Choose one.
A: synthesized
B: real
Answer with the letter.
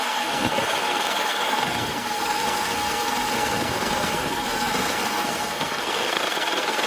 A